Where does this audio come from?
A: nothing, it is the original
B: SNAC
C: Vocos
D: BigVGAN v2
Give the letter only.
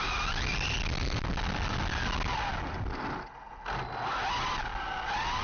A